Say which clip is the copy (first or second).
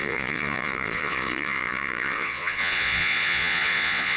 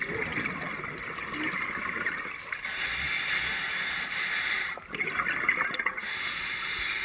first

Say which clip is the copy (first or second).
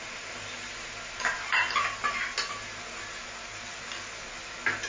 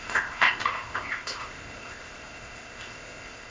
second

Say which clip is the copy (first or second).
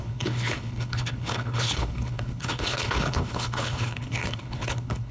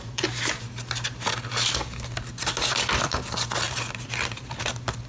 first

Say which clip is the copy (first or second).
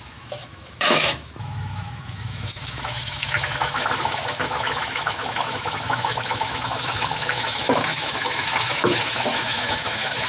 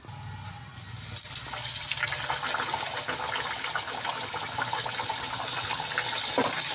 first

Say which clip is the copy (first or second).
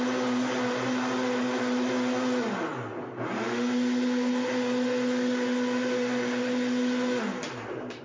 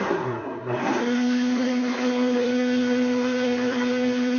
second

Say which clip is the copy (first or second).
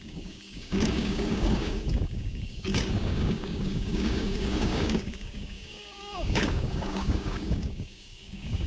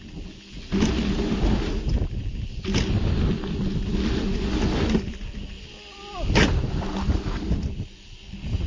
first